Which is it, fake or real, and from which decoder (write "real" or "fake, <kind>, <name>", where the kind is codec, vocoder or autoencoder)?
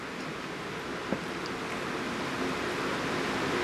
real